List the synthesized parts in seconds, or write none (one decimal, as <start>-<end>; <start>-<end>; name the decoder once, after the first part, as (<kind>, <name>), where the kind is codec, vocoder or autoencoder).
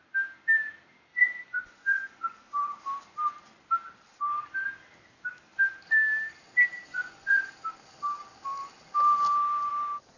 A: 1.1-2.8 (vocoder, Vocos); 6.9-7.5